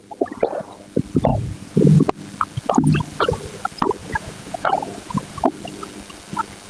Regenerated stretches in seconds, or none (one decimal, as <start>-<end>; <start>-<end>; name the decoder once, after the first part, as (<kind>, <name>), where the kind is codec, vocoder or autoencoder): 1.3-1.9 (vocoder, Vocos); 4.0-5.4